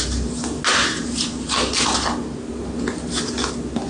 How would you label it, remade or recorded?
recorded